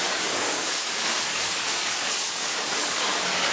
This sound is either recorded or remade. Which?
remade